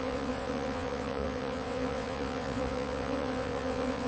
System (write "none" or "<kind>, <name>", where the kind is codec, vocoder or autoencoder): vocoder, WaveNeXt